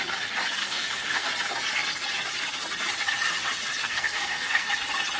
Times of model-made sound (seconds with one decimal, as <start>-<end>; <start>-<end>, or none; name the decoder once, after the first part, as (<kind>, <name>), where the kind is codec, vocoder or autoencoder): 0.6-1.3 (codec, SNAC); 3.8-4.7